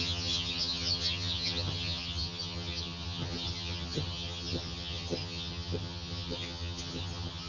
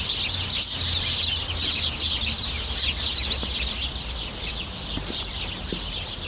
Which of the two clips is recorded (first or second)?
second